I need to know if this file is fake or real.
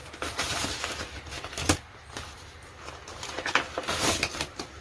real